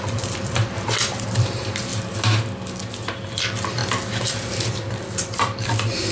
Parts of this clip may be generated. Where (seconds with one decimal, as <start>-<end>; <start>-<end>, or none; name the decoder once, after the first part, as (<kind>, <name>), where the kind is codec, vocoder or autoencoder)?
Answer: 0.0-1.9 (vocoder, BigVGAN v2); 3.0-3.8; 4.3-6.1